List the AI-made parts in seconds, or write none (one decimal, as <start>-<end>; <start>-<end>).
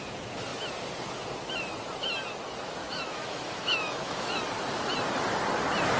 2.8-4.4